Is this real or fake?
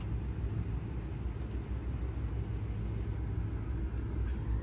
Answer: real